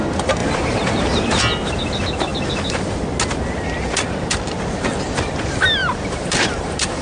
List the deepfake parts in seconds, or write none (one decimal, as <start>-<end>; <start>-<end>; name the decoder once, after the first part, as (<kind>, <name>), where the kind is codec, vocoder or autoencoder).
0.4-1.4 (vocoder, BigVGAN v2); 5.8-7.0